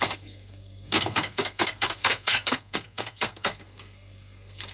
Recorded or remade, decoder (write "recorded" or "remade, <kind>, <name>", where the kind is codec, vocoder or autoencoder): remade, codec, SNAC